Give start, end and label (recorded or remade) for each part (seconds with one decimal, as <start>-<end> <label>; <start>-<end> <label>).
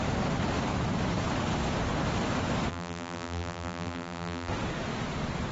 0.0-2.7 recorded; 2.7-4.5 remade; 4.5-5.5 recorded